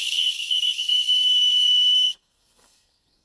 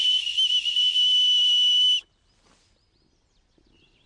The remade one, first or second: first